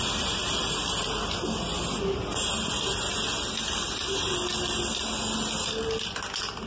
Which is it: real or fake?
real